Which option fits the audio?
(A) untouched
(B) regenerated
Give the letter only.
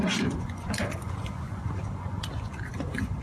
B